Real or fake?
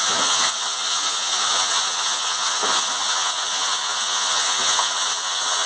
fake